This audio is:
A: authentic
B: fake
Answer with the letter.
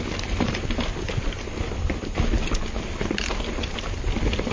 A